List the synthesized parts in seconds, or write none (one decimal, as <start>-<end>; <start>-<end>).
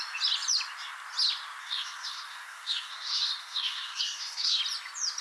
1.6-4.6